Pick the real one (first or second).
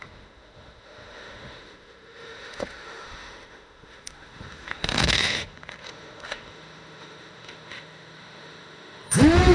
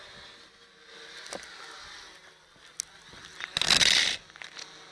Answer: second